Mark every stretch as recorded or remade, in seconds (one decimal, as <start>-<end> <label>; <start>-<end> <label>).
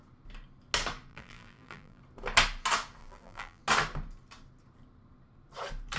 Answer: 0.0-1.1 recorded; 1.1-2.0 remade; 2.0-3.0 recorded; 3.0-3.6 remade; 3.6-6.0 recorded